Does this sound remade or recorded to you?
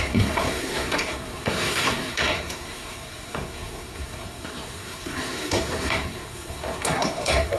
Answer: remade